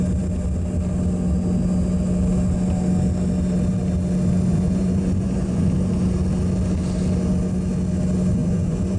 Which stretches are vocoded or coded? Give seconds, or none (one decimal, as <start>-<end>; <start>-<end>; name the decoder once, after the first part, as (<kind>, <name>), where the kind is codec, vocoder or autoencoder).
4.5-5.7 (vocoder, Vocos); 8.4-9.0